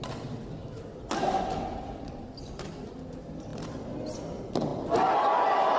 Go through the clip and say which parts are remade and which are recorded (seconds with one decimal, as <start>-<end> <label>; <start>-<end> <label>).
0.0-5.8 recorded